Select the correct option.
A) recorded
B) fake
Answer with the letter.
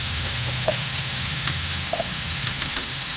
B